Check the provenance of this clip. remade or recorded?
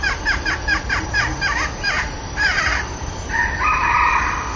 remade